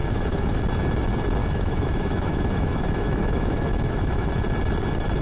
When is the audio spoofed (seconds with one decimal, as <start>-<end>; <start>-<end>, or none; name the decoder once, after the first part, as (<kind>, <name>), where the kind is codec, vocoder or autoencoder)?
0.0-0.6 (autoencoder, DAC-VAE); 1.4-4.3